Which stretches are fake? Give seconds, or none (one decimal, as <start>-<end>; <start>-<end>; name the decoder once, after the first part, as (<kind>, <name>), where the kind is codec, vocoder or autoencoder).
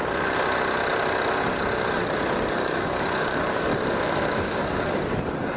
2.5-3.7 (codec, DAC); 4.4-5.6